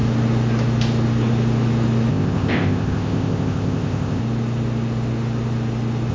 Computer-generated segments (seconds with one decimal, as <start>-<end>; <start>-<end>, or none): 2.1-4.2